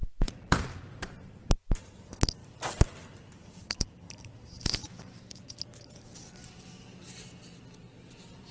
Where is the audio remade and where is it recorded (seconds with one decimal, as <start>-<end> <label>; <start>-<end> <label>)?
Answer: 0.0-1.5 remade; 1.5-2.4 recorded; 2.4-5.3 remade; 5.3-8.5 recorded